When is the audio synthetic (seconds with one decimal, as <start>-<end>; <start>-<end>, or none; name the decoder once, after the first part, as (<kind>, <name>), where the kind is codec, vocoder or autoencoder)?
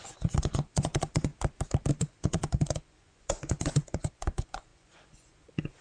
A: 0.0-1.3 (vocoder, Vocos); 1.9-5.8